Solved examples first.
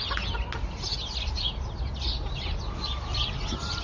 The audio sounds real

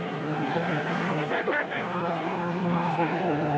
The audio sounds fake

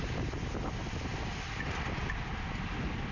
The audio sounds real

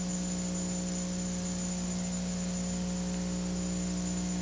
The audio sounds real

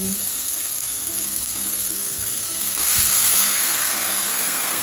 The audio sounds fake